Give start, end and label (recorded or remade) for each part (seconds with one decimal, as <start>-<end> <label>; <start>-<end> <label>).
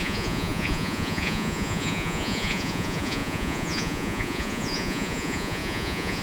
0.0-6.2 remade